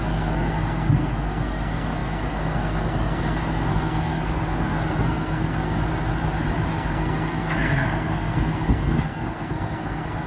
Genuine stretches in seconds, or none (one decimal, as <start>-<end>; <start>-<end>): 5.8-6.7